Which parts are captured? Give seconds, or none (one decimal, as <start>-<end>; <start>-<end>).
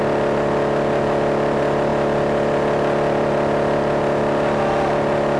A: 0.0-5.4